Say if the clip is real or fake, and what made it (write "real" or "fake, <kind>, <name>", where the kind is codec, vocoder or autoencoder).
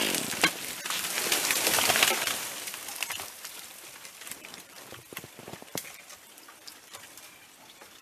fake, vocoder, BigVGAN v2